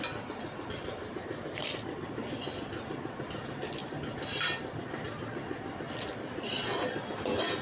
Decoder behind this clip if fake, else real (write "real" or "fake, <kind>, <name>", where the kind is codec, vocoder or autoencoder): real